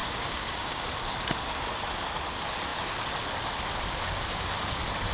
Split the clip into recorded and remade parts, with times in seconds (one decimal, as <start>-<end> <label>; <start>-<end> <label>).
0.0-0.9 remade; 0.9-5.1 recorded